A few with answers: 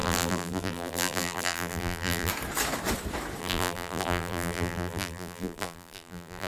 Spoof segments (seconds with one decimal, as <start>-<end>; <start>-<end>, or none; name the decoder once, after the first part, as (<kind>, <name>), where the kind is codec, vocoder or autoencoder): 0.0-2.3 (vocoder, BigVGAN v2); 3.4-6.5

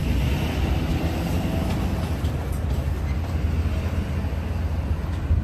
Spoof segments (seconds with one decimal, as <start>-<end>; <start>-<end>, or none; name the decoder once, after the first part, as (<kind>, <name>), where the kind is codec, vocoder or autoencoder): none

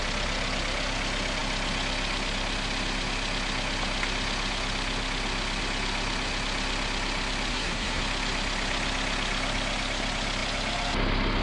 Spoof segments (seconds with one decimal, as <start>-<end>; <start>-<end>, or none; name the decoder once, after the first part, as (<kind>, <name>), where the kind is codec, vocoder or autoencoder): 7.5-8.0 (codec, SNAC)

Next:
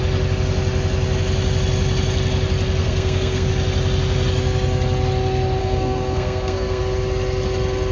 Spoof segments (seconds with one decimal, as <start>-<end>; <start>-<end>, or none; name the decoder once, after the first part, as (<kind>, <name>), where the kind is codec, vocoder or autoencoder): 2.8-3.5 (codec, SNAC); 5.6-6.8

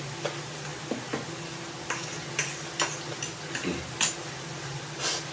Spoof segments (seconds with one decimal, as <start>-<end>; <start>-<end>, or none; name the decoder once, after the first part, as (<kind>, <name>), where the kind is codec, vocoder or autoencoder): none

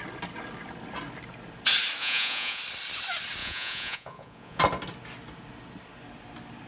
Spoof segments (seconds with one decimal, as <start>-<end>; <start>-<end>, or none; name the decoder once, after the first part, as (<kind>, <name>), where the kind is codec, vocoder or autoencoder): 2.0-2.6 (vocoder, Vocos); 3.4-4.6

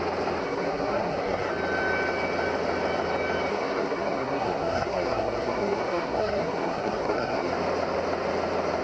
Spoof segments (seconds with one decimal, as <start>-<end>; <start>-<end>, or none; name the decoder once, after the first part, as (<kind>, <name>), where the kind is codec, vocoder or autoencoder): 0.4-1.5 (codec, SNAC); 3.5-7.5

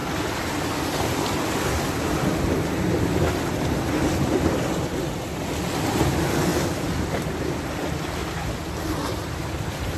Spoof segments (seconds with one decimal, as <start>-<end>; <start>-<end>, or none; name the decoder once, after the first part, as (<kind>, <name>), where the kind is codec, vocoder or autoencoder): 6.5-7.4 (vocoder, BigVGAN v2); 8.2-9.3